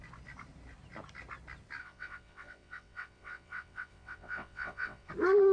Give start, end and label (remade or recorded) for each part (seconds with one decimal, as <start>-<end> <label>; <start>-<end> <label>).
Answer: 0.0-1.8 recorded; 1.8-5.1 remade; 5.1-5.5 recorded